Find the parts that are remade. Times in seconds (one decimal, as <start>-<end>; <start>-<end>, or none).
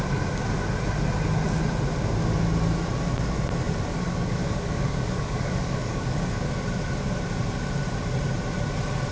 3.9-6.5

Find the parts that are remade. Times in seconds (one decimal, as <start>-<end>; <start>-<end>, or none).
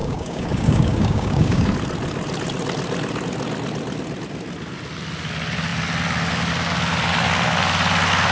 0.0-1.7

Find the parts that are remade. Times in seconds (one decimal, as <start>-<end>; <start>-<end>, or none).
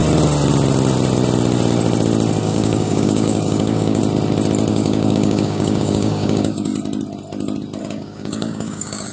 2.4-4.0; 4.7-6.7; 7.8-9.1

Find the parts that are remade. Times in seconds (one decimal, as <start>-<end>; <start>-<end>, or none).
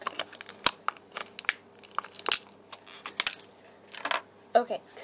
none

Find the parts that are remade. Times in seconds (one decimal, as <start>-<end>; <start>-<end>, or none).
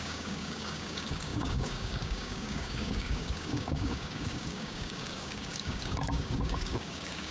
0.0-7.3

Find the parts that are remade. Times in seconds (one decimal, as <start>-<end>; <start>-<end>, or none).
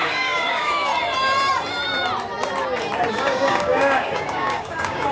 0.0-0.9; 3.1-5.1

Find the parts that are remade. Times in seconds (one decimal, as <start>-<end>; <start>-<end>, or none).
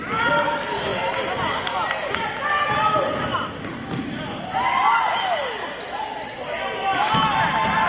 none